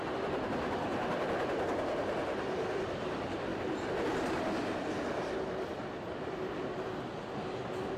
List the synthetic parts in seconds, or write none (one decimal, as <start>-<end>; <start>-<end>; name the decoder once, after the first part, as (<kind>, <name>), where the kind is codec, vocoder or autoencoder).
none